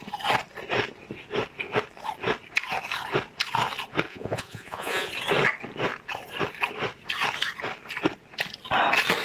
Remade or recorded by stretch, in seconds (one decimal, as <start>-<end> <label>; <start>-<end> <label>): 0.0-4.1 recorded; 4.1-5.1 remade; 5.1-9.2 recorded